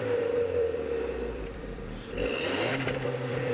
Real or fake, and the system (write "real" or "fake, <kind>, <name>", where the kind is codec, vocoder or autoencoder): fake, vocoder, BigVGAN v2